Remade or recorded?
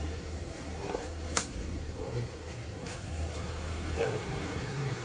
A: remade